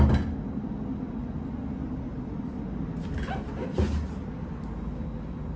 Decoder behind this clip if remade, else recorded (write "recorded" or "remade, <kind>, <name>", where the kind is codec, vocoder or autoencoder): recorded